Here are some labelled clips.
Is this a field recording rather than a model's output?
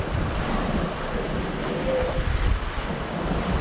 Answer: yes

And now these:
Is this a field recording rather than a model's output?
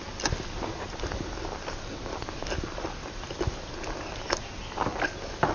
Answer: yes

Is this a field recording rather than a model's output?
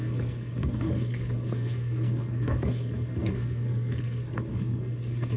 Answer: no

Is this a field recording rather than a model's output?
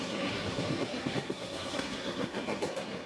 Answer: no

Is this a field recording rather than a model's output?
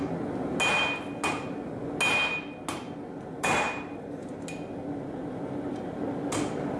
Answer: yes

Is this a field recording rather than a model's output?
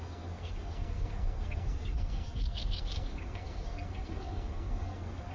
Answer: no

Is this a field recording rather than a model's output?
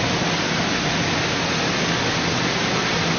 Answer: yes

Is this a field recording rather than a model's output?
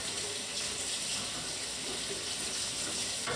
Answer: yes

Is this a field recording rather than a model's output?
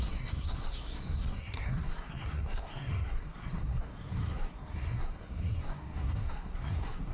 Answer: no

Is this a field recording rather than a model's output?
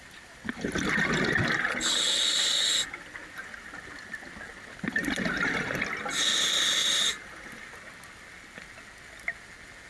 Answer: yes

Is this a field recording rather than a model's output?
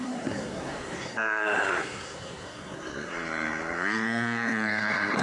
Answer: no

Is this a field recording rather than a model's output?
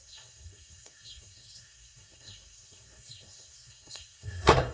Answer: no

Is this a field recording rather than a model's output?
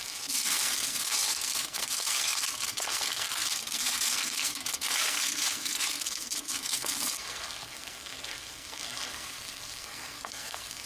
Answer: no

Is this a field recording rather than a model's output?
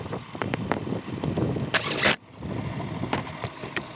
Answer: yes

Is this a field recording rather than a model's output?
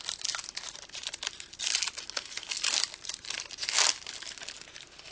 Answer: yes